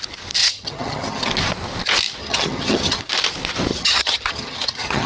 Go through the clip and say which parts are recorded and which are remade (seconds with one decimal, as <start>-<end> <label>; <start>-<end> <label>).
0.0-0.4 recorded; 0.4-1.3 remade; 1.3-2.2 recorded; 2.2-3.0 remade; 3.0-3.7 recorded; 3.7-5.1 remade